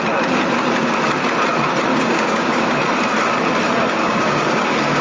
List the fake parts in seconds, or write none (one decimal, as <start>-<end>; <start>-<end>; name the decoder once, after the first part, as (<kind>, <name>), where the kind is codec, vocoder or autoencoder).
1.9-2.8 (codec, DAC); 4.0-5.0